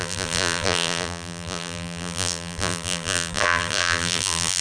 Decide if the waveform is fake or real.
fake